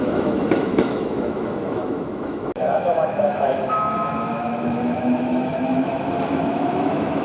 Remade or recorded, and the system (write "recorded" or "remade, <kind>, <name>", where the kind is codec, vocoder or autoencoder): remade, autoencoder, DAC-VAE